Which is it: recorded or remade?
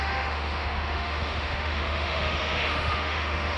remade